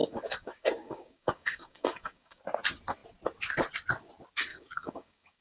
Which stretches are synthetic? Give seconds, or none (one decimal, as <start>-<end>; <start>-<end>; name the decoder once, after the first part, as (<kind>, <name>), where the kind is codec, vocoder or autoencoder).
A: 0.0-2.4 (codec, DAC); 4.5-5.4